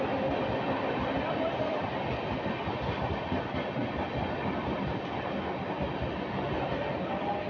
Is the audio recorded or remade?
recorded